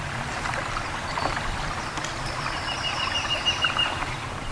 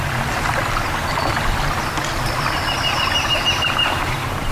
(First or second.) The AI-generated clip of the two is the first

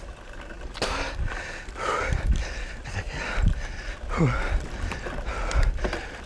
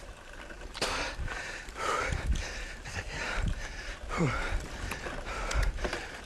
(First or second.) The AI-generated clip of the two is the second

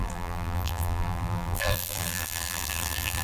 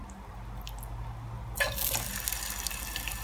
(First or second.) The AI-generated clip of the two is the first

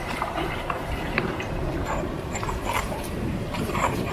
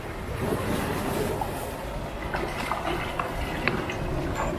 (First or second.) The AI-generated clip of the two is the first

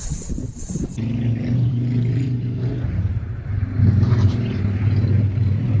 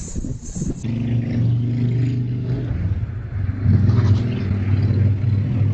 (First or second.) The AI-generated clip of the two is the first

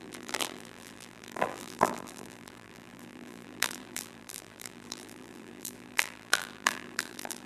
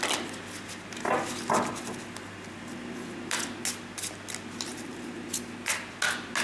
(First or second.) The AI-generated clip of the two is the first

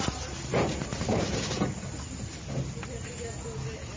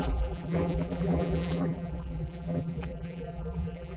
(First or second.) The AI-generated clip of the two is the second